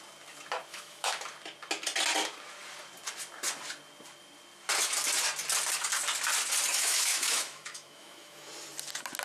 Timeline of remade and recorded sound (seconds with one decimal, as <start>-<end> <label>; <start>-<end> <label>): 0.0-0.7 recorded; 0.7-1.2 remade; 1.2-6.7 recorded; 6.7-8.5 remade; 8.5-9.2 recorded